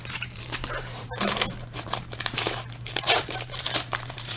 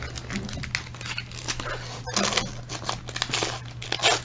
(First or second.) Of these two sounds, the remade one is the first